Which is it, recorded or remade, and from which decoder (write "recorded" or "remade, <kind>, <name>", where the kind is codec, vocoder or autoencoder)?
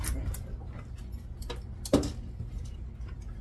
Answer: recorded